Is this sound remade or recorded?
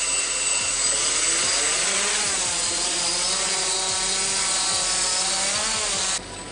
recorded